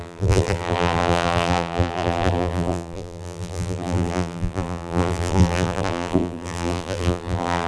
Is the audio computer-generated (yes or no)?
yes